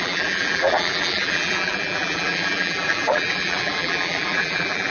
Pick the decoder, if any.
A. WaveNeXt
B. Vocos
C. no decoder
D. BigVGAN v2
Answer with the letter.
D